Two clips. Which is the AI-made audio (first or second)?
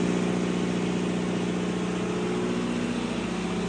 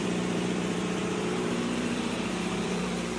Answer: second